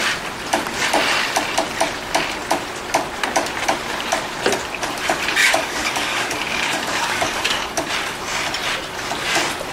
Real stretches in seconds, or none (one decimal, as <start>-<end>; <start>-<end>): 0.0-5.4; 7.9-9.7